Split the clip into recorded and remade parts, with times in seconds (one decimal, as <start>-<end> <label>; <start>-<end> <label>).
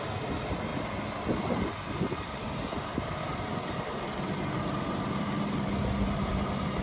0.0-6.8 recorded